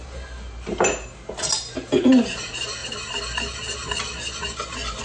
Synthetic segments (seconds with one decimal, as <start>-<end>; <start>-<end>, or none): 2.8-4.4